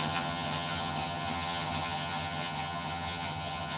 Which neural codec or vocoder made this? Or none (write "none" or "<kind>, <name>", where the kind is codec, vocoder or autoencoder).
vocoder, HiFi-GAN